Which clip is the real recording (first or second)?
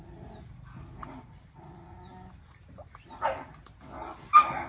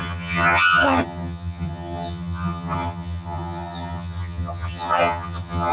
first